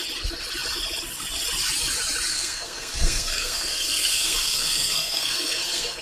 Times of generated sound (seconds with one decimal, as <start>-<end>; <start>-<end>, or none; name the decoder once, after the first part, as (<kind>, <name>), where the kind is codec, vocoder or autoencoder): 2.3-6.0 (codec, SNAC)